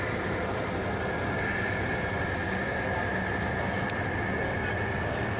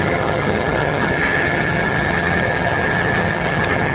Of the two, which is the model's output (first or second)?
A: second